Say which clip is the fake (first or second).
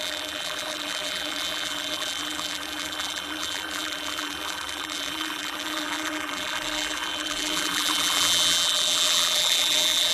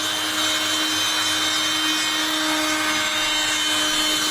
first